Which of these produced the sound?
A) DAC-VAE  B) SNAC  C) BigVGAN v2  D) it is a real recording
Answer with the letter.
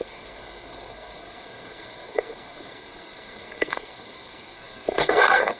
B